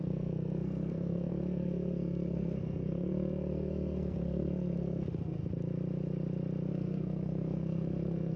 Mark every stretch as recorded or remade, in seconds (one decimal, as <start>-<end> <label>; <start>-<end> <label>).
0.0-5.4 remade; 5.4-6.7 recorded; 6.7-8.4 remade